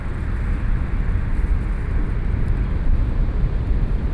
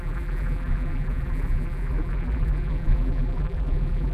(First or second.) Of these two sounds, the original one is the first